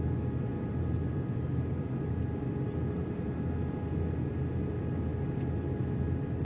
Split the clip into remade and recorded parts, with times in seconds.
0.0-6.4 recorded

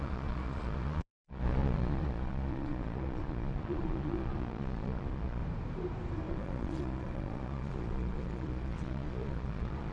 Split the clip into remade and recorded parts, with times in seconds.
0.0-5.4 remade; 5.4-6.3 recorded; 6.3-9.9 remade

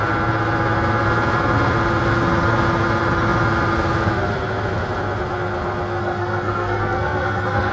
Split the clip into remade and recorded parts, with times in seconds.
0.0-6.0 recorded; 6.0-7.7 remade

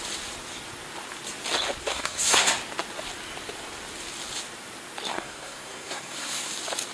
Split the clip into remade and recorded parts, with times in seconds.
0.0-1.8 recorded; 1.8-2.5 remade; 2.5-5.1 recorded; 5.1-6.5 remade; 6.5-6.9 recorded

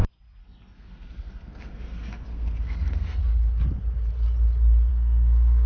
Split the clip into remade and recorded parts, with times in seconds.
0.0-0.4 recorded; 0.4-3.2 remade; 3.2-4.9 recorded; 4.9-5.7 remade

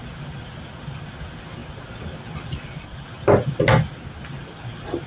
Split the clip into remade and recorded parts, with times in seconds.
0.0-5.1 recorded